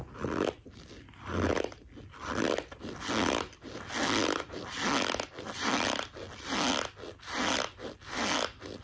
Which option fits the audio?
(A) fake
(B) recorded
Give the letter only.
B